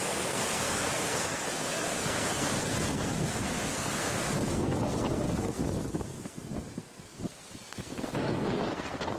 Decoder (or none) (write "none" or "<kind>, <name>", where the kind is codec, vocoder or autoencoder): codec, SNAC